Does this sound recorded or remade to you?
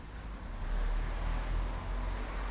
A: recorded